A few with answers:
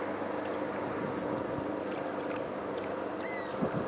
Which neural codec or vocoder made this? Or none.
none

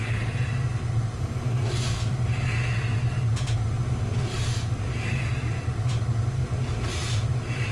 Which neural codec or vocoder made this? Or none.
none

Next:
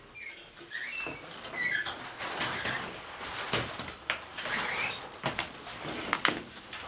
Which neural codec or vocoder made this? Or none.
none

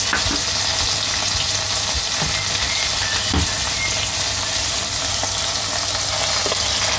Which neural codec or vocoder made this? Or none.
none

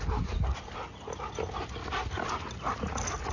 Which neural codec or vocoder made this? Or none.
none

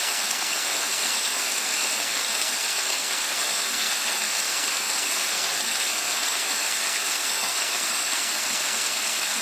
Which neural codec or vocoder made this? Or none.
codec, SNAC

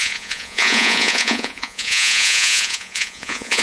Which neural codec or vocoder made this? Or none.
vocoder, Vocos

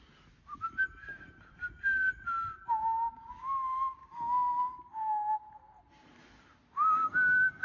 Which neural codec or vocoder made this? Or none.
none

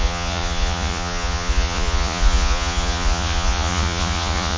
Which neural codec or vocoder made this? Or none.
vocoder, Vocos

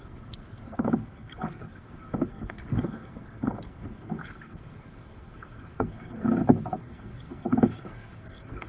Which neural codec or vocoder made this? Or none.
codec, SNAC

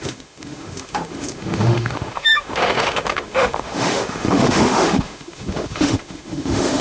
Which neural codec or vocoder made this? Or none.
autoencoder, DAC-VAE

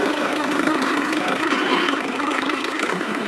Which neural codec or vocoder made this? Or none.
codec, SNAC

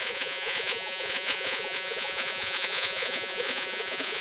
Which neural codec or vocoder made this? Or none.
vocoder, Vocos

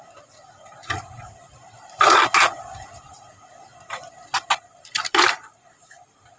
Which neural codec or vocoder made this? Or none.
vocoder, BigVGAN v2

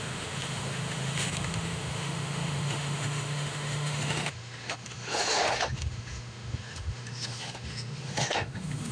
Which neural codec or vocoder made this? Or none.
autoencoder, DAC-VAE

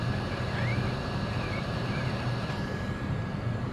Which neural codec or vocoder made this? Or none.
vocoder, BigVGAN v2